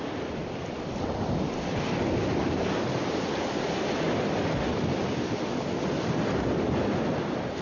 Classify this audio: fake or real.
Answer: real